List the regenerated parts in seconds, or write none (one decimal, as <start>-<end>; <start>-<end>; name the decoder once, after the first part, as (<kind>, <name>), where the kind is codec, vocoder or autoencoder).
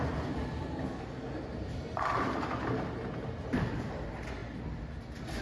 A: none